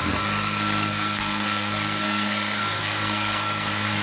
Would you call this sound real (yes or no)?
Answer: no